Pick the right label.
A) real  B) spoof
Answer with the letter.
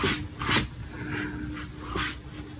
A